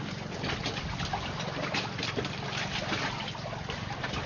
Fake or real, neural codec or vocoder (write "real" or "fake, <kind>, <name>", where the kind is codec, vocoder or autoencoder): real